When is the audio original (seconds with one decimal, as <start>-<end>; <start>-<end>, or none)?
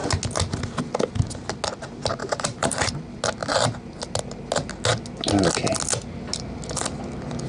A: 0.0-2.2; 2.9-7.5